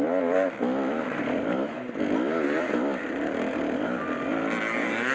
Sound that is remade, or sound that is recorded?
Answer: remade